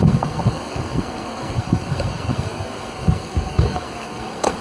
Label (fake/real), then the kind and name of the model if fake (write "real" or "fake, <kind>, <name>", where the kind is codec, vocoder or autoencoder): fake, codec, SNAC